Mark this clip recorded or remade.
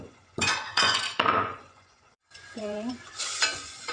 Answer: remade